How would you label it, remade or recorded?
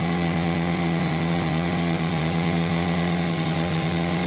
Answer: remade